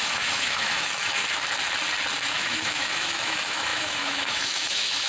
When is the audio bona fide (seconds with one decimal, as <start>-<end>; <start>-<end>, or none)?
1.2-2.3